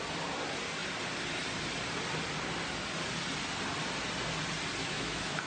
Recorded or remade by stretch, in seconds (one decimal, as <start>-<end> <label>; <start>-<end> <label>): 0.0-4.8 recorded; 4.8-5.5 remade